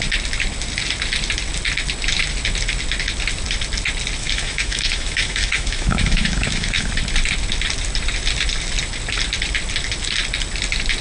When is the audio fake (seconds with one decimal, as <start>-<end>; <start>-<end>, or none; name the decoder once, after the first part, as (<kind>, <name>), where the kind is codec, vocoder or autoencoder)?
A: 4.2-6.9 (autoencoder, DAC-VAE)